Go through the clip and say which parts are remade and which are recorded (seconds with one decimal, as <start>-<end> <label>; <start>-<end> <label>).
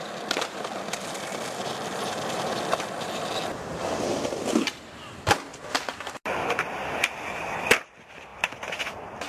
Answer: 0.0-1.6 recorded; 1.6-3.3 remade; 3.3-8.3 recorded; 8.3-9.3 remade